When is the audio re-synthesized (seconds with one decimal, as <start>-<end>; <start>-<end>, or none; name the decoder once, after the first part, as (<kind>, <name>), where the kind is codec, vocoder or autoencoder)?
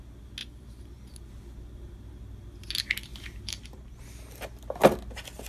0.4-2.2 (vocoder, BigVGAN v2); 3.1-4.0